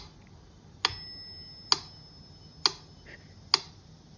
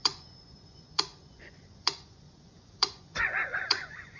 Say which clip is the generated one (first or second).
second